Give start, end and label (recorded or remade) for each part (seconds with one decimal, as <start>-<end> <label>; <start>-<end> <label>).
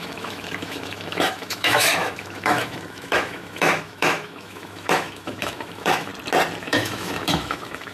0.0-6.1 remade; 6.1-6.6 recorded; 6.6-7.9 remade